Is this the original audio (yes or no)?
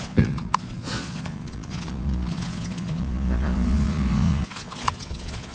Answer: no